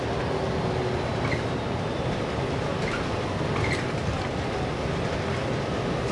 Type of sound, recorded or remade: recorded